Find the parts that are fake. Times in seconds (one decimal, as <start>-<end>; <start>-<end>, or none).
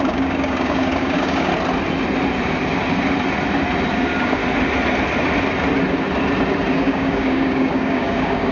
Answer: 0.0-1.5; 3.9-4.4; 6.7-8.5